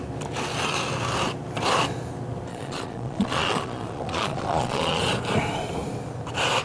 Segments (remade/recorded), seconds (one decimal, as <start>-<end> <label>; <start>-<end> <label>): 0.0-2.5 recorded; 2.5-5.0 remade; 5.0-6.6 recorded